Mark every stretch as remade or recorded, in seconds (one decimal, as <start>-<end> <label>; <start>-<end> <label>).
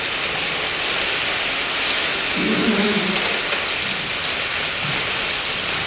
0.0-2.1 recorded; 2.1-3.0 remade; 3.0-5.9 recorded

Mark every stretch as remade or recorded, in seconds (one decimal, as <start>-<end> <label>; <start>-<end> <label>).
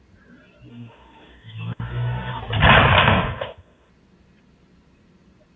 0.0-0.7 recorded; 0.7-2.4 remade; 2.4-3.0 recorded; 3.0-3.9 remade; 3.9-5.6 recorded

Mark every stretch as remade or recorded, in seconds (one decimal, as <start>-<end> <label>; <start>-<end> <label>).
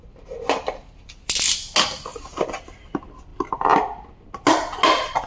0.0-5.3 recorded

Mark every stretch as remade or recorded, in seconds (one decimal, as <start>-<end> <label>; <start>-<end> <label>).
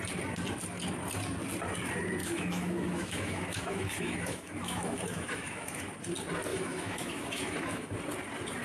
0.0-2.2 recorded; 2.2-5.8 remade; 5.8-6.5 recorded; 6.5-7.9 remade; 7.9-8.6 recorded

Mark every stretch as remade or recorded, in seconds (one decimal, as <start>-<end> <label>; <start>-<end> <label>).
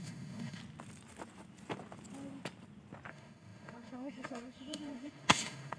0.0-0.6 remade; 0.6-3.1 recorded; 3.1-5.8 remade